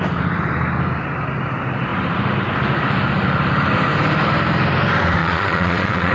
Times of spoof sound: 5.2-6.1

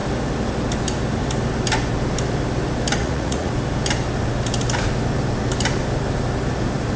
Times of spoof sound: 3.0-3.5